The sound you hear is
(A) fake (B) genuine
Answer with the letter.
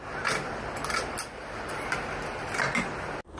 B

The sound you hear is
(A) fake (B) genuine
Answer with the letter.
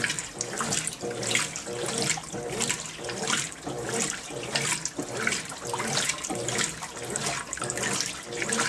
B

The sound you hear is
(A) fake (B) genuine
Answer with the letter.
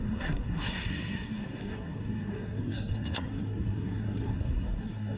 A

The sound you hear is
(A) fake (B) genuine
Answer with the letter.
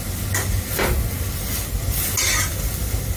B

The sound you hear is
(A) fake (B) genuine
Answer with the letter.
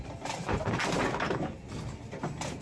B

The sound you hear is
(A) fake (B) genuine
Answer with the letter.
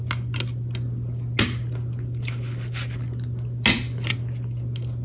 B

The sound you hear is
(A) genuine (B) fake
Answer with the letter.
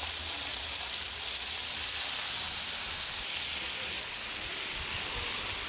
A